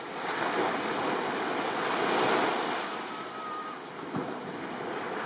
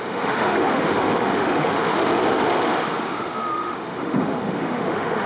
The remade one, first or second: second